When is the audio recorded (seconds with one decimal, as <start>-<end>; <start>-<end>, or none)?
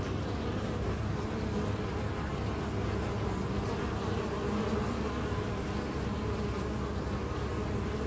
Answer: 0.0-8.1